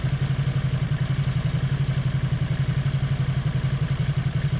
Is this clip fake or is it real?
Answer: real